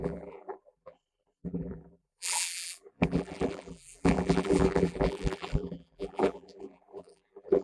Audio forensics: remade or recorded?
remade